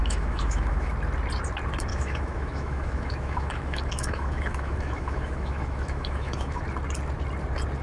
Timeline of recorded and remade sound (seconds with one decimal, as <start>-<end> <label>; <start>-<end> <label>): 0.0-0.9 remade; 0.9-1.9 recorded; 1.9-6.6 remade; 6.6-7.8 recorded